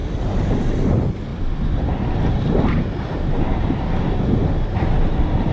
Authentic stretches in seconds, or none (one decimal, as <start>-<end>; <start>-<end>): 0.5-1.3; 4.6-5.5